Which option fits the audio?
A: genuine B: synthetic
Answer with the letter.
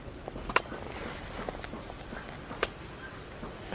A